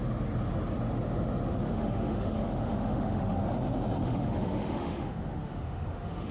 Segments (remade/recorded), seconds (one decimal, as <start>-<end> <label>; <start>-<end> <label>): 0.0-1.5 recorded; 1.5-3.4 remade; 3.4-4.0 recorded; 4.0-6.3 remade